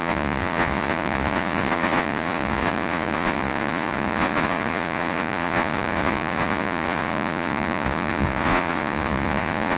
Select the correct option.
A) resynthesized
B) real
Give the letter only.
A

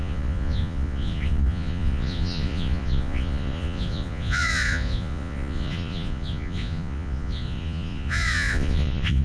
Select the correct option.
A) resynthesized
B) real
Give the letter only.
A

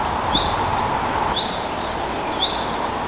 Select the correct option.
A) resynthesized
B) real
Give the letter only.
B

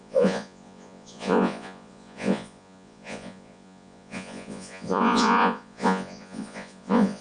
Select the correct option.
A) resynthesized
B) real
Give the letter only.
A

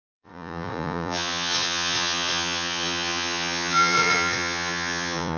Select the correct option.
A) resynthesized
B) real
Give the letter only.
A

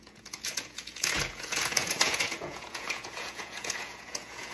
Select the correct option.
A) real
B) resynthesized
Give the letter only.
B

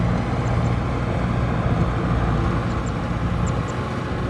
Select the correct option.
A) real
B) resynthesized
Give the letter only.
A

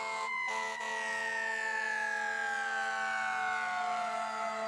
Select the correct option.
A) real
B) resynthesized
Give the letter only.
A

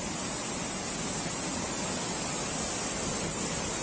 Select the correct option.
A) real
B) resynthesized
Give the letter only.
A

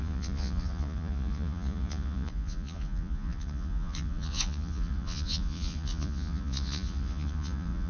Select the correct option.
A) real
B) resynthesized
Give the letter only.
B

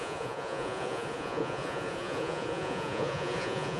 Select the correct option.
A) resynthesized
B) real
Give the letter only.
A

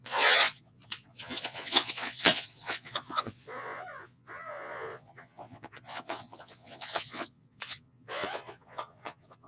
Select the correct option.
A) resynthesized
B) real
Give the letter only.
A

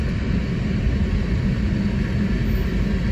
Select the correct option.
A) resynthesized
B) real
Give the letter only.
B